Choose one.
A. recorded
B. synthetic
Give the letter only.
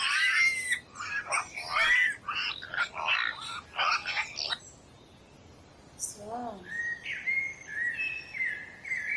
A